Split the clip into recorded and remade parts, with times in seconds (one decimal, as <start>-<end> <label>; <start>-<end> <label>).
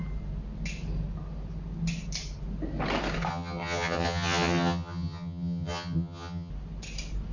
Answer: 0.0-3.3 recorded; 3.3-6.5 remade; 6.5-7.3 recorded